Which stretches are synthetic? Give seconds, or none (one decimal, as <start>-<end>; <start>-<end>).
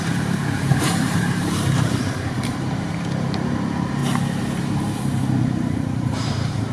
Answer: 0.0-4.0; 5.4-6.7